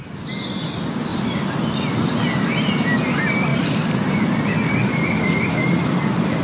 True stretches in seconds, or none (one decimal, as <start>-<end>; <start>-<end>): 0.0-1.1; 2.1-3.5; 4.1-6.4